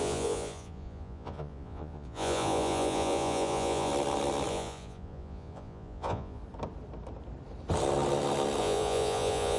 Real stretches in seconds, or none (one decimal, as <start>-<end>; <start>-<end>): 3.9-4.5; 6.4-8.6